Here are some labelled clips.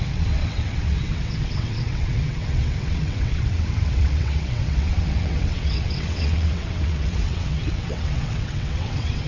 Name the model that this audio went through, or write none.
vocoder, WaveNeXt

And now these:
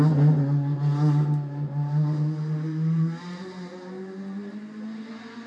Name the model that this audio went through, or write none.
none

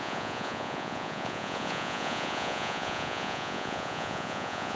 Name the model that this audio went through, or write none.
vocoder, Vocos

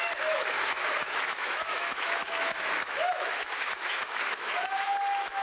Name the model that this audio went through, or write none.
autoencoder, DAC-VAE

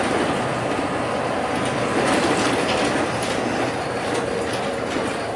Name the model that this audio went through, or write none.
none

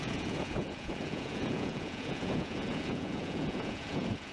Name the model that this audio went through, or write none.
vocoder, Vocos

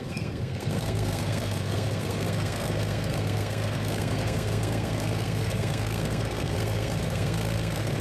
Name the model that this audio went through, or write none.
codec, SNAC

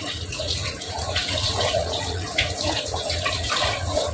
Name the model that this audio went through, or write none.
vocoder, Vocos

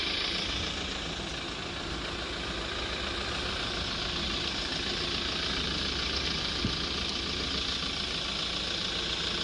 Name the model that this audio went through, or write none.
none